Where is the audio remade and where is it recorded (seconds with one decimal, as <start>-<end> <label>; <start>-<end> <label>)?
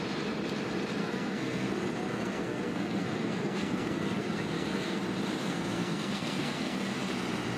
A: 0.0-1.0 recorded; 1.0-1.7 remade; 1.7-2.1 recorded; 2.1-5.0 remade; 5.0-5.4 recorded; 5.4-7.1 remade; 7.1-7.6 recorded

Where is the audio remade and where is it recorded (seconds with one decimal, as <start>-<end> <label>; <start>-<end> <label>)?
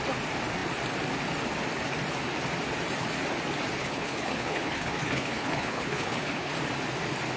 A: 0.0-3.8 recorded; 3.8-6.5 remade; 6.5-7.4 recorded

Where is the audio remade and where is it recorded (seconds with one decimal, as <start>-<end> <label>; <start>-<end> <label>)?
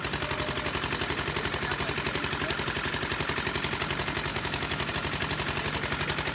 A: 0.0-4.3 recorded; 4.3-4.9 remade; 4.9-6.3 recorded